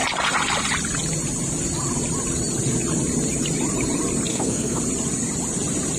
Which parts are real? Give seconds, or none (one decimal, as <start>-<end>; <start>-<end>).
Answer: 0.0-4.3; 4.8-6.0